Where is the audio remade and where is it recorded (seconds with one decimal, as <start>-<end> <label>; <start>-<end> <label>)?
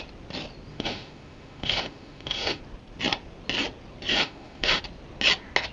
0.0-0.7 recorded; 0.7-2.6 remade; 2.6-4.1 recorded; 4.1-4.8 remade; 4.8-5.7 recorded